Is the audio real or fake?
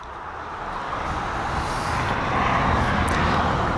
real